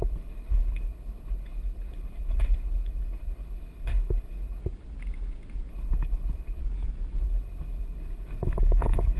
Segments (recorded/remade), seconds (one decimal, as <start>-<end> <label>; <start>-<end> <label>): 0.0-4.6 remade; 4.6-5.7 recorded; 5.7-6.6 remade; 6.6-7.2 recorded; 7.2-9.2 remade